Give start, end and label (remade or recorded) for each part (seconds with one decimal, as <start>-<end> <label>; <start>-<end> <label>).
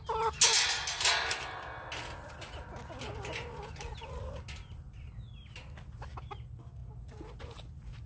0.0-8.1 recorded